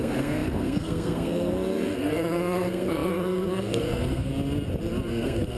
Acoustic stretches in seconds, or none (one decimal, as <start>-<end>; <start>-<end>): 4.3-5.1